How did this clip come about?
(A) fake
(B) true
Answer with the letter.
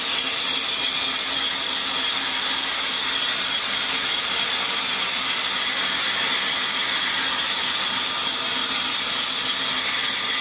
B